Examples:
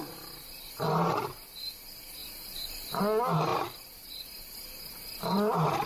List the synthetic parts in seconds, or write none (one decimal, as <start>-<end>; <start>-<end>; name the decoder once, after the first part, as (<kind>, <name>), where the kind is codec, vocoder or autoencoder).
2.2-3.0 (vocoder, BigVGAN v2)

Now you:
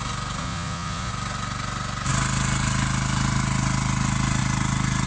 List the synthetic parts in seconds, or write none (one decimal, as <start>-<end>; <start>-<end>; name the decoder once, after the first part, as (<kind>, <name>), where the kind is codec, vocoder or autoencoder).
0.4-1.1 (vocoder, Vocos)

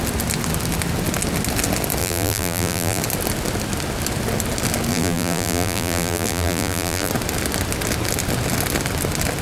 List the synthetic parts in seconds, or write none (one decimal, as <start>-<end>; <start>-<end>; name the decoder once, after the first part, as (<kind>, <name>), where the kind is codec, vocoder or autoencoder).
2.0-3.0 (vocoder, BigVGAN v2); 4.9-7.1

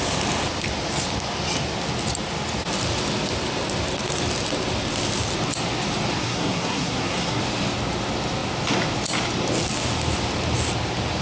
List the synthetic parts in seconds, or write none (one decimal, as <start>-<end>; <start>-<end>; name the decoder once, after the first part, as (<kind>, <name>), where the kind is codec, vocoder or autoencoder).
6.2-7.4 (codec, SNAC)